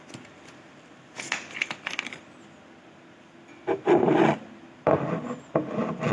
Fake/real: real